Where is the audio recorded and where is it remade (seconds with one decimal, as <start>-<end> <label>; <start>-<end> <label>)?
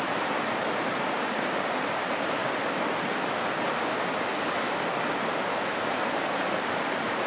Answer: 0.0-2.4 remade; 2.4-5.4 recorded; 5.4-7.3 remade